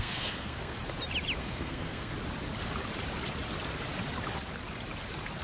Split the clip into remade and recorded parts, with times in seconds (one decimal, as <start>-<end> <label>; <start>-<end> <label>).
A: 0.0-0.8 remade; 0.8-1.4 recorded; 1.4-2.1 remade; 2.1-5.4 recorded